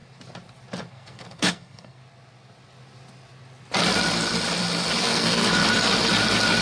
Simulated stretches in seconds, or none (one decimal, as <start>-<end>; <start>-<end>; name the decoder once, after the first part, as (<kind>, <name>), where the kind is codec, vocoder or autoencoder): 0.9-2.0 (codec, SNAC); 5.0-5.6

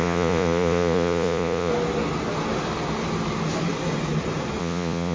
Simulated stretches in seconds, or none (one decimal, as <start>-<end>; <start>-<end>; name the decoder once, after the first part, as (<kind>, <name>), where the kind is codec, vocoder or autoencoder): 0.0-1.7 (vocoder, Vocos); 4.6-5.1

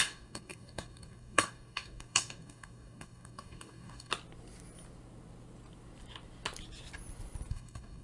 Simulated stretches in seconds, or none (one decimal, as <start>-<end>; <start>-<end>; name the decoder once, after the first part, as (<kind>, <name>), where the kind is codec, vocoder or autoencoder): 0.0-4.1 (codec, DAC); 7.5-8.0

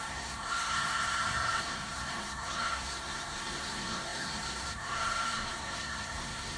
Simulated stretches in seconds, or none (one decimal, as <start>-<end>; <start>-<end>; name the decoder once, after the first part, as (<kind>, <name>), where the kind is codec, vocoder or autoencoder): 0.0-6.6 (codec, SNAC)

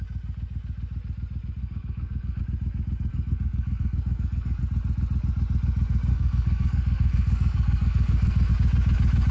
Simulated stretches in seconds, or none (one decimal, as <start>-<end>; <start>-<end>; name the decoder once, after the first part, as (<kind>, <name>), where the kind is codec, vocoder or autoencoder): 1.6-2.4 (codec, SNAC); 3.1-4.6; 6.1-8.5

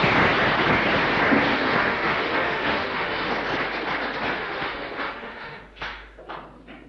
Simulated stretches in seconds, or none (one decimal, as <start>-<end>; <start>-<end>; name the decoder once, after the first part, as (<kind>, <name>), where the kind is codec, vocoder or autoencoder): 1.5-3.3 (autoencoder, DAC-VAE); 4.4-6.2